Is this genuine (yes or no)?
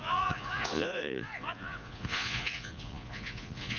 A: no